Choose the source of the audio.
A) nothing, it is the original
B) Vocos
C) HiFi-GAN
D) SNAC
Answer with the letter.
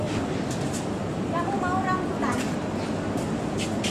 A